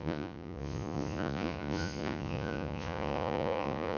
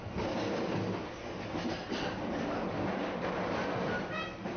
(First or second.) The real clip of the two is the second